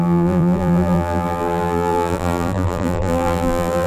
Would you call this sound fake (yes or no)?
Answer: yes